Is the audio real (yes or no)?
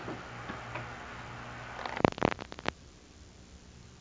yes